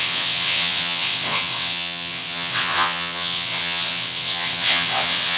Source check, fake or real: fake